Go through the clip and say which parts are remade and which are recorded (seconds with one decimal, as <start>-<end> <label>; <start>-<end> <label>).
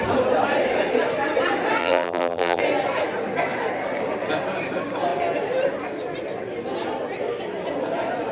0.0-1.8 recorded; 1.8-2.6 remade; 2.6-8.3 recorded